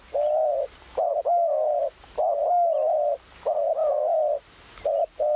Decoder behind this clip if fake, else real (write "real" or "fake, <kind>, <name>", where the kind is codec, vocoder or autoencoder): real